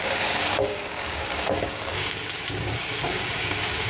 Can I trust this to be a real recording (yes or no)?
no